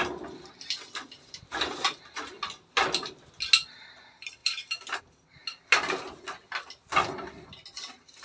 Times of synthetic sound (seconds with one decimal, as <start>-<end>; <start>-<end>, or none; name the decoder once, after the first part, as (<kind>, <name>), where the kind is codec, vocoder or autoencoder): 1.0-2.4 (vocoder, BigVGAN v2); 4.4-5.0